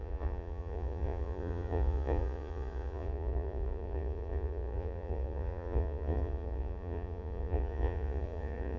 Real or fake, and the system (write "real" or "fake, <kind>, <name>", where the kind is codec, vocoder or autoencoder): fake, vocoder, Vocos